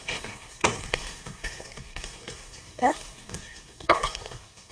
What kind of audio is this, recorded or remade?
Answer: remade